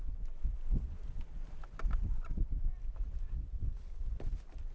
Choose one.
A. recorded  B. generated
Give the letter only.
A